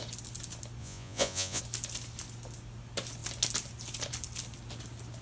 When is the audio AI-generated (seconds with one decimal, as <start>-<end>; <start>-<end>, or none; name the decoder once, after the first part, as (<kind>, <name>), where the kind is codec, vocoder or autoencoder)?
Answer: 0.8-1.6 (vocoder, Vocos)